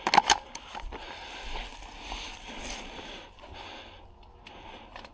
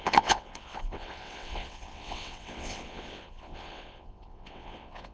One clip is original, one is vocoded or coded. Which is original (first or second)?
first